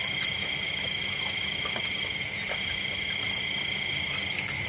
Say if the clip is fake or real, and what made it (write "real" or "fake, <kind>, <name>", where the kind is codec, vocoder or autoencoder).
real